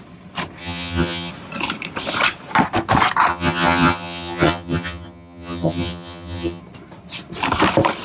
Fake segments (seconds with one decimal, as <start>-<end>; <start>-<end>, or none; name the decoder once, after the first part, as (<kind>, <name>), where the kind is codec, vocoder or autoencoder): 0.6-1.3 (vocoder, HiFi-GAN); 3.3-6.6